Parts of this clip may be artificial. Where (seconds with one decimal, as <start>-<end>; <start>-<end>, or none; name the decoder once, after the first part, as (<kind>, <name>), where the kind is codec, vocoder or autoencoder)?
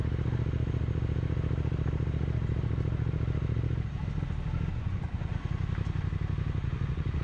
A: 4.7-5.3 (vocoder, Vocos); 6.6-7.2